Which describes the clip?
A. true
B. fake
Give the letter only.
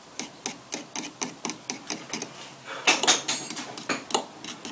A